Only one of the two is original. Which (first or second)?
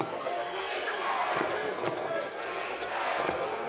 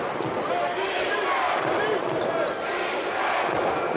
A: second